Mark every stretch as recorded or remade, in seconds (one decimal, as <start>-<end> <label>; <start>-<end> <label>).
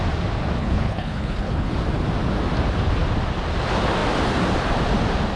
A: 0.0-0.6 recorded; 0.6-1.7 remade; 1.7-5.4 recorded